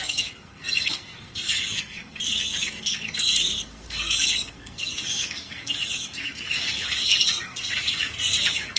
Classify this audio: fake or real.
fake